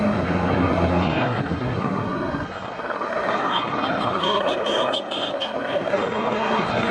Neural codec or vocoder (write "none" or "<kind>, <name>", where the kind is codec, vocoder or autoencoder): codec, SNAC